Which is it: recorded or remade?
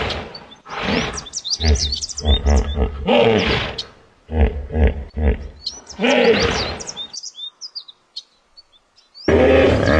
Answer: recorded